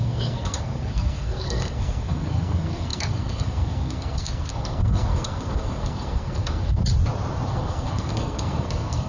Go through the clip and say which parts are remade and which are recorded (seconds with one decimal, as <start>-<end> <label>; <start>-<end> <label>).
0.0-6.8 remade; 6.8-7.5 recorded; 7.5-9.1 remade